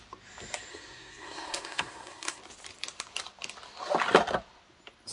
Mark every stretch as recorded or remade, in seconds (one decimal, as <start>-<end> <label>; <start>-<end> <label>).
0.0-0.7 recorded; 0.7-2.4 remade; 2.4-5.1 recorded